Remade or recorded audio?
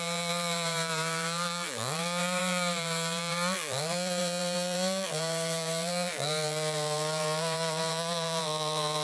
remade